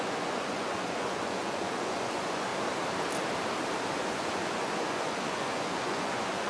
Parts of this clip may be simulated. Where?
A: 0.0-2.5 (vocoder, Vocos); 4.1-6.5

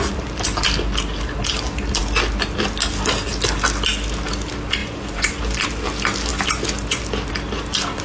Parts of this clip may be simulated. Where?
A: 4.8-5.4 (vocoder, Vocos)

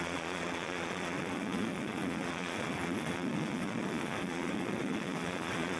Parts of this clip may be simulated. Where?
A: 0.0-5.8 (vocoder, Vocos)

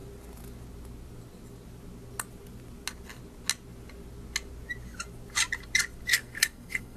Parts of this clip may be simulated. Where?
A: 6.1-7.0 (codec, SNAC)